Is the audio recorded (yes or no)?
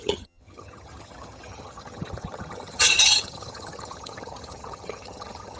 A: no